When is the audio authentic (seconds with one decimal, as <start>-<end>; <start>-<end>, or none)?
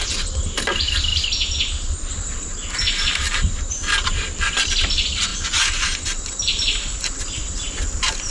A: 1.1-3.7; 5.3-6.2